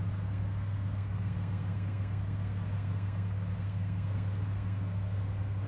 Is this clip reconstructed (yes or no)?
yes